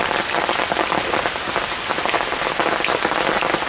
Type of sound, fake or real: real